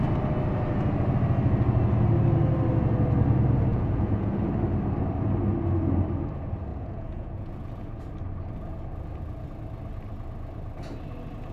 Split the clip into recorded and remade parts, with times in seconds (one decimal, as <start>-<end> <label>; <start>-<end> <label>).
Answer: 0.0-3.7 recorded; 3.7-4.5 remade; 4.5-6.7 recorded; 6.7-8.0 remade; 8.0-11.5 recorded